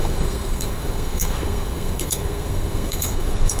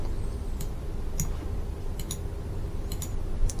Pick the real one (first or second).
second